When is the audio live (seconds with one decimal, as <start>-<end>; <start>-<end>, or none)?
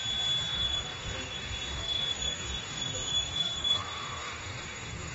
0.0-0.5